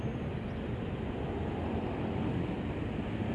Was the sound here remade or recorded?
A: remade